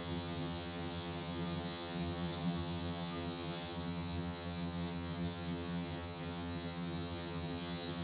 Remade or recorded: remade